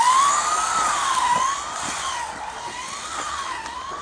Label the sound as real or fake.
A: real